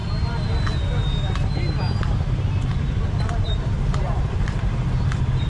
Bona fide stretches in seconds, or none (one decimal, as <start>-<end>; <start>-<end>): 0.0-3.2